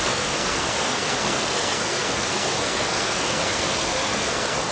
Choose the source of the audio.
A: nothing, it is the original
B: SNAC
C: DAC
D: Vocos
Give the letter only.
B